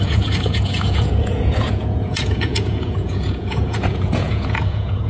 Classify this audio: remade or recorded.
remade